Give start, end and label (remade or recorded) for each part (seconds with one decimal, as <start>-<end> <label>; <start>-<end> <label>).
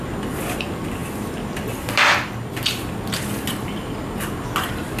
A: 0.0-5.0 recorded